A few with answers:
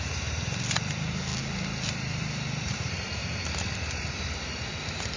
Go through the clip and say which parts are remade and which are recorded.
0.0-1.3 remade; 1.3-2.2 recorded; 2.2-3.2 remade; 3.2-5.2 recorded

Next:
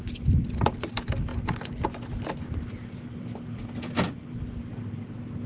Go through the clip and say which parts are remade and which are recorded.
0.0-5.5 recorded